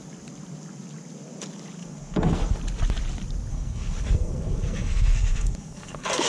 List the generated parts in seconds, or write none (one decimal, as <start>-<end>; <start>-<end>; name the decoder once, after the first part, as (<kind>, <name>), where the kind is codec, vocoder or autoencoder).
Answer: 1.8-2.6 (codec, SNAC); 3.5-6.3